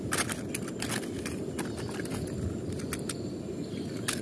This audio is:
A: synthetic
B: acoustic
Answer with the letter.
B